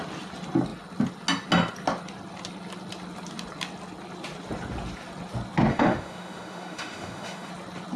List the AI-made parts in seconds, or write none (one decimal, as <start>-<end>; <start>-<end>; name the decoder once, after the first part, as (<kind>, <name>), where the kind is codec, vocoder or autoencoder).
5.7-7.5 (autoencoder, DAC-VAE)